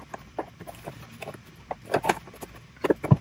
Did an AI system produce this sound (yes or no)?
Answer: no